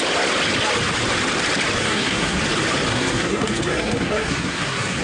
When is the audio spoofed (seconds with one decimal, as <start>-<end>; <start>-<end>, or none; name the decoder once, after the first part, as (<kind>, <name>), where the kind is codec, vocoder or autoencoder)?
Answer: 1.8-2.4 (codec, SNAC); 2.9-5.0